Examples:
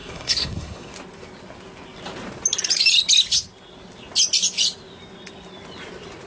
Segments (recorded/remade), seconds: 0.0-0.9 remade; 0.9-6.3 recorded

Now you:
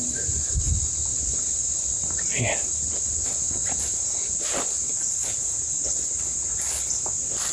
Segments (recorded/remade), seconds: 0.0-7.5 recorded

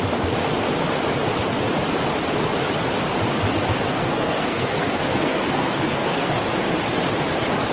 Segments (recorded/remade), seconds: 0.0-3.9 recorded; 3.9-6.4 remade; 6.4-7.7 recorded